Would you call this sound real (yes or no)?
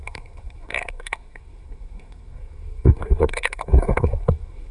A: no